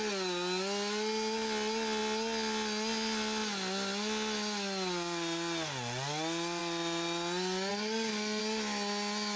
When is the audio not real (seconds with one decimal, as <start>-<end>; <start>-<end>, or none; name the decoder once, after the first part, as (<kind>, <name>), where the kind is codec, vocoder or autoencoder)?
7.7-8.4 (codec, SNAC)